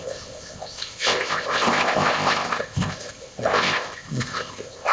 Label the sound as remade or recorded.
remade